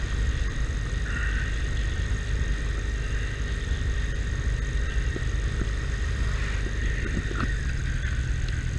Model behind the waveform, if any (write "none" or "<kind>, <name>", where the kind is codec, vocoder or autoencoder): none